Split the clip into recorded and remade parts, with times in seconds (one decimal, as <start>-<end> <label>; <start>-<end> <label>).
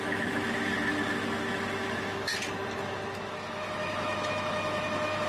0.0-2.3 remade; 2.3-3.2 recorded; 3.2-5.3 remade